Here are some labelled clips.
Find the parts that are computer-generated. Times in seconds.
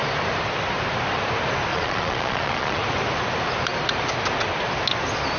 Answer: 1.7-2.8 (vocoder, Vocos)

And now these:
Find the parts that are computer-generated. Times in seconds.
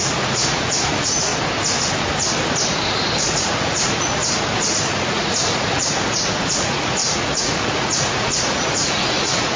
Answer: 0.0-1.3 (vocoder, Vocos); 3.2-4.2; 4.9-9.6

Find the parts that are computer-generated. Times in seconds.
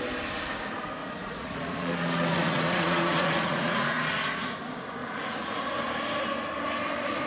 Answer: 1.0-1.9 (vocoder, Vocos); 2.3-4.6; 5.0-5.7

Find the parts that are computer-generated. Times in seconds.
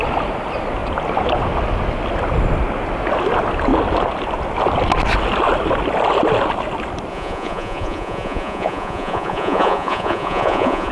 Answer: 7.1-10.9 (vocoder, Vocos)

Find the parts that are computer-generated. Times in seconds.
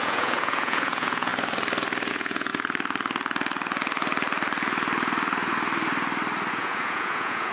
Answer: 0.0-1.3 (vocoder, Vocos); 2.1-2.5; 6.5-7.5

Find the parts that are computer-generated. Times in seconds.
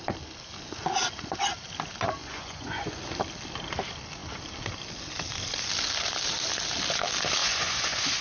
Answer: 2.2-3.0 (vocoder, Vocos); 7.4-8.2